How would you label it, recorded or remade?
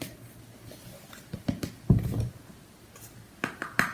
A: recorded